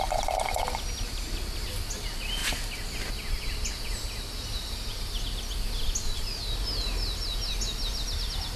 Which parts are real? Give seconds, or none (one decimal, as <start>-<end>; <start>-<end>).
0.0-8.6